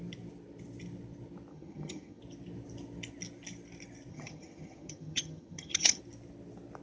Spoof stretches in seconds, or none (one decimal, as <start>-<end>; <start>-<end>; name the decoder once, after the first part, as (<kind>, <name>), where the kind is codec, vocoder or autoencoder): 1.5-2.2 (vocoder, HiFi-GAN); 4.1-6.0